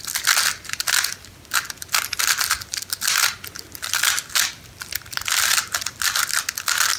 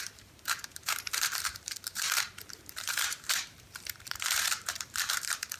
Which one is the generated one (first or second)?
second